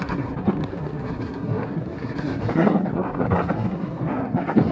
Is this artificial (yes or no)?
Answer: yes